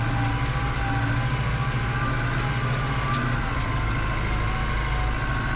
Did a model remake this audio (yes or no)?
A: no